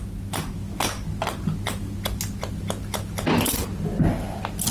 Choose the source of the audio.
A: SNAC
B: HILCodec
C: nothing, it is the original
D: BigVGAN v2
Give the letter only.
C